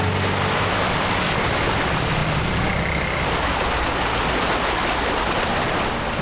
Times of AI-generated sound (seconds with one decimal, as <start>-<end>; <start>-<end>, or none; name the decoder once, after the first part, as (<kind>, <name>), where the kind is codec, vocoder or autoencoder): none